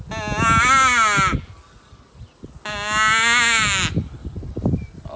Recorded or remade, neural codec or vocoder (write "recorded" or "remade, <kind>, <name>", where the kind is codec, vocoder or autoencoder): recorded